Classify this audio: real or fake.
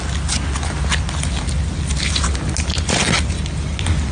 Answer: real